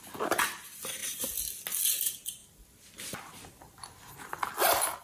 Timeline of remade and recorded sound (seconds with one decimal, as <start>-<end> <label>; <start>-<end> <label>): 0.0-5.0 recorded